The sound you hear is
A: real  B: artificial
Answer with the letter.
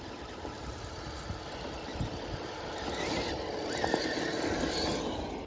A